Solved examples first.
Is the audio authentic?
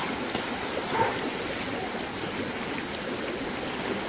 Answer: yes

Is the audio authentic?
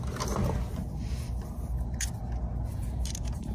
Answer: yes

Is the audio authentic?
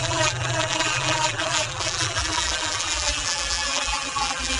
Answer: no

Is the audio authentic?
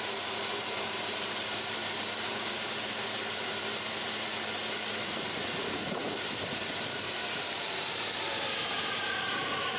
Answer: no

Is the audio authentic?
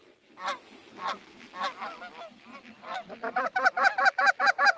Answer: yes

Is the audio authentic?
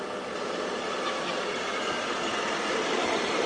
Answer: no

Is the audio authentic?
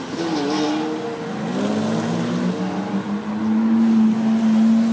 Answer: yes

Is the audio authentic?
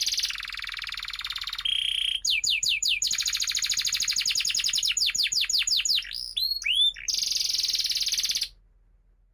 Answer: yes